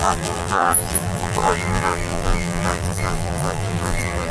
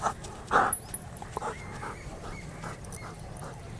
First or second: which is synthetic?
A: first